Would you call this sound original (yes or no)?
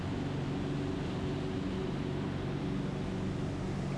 yes